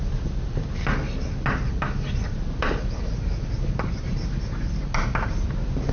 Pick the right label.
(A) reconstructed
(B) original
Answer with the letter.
B